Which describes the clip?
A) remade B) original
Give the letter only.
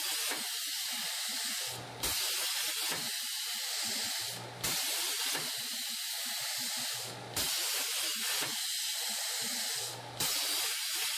B